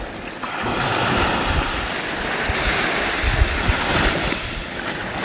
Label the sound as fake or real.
real